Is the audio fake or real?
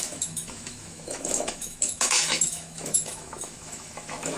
fake